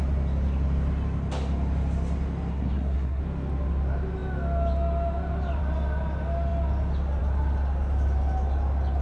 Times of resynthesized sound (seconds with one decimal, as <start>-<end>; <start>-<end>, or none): 2.5-3.2